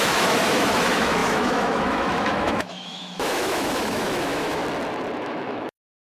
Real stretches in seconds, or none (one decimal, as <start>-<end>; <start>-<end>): 4.6-5.2